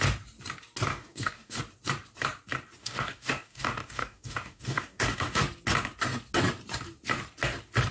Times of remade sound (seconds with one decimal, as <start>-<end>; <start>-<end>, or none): 0.9-1.6; 2.8-5.4